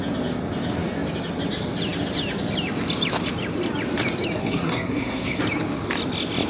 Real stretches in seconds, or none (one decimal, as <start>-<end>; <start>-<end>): 0.0-4.4; 5.4-6.5